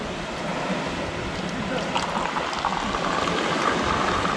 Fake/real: real